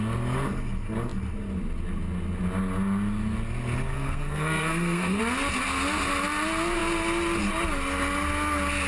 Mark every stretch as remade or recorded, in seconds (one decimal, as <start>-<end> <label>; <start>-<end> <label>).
0.0-3.9 recorded; 3.9-5.2 remade; 5.2-8.9 recorded